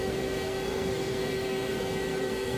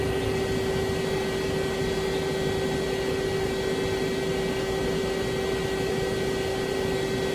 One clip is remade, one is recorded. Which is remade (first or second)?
first